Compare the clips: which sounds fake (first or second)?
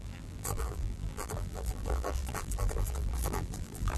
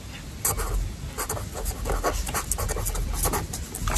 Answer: first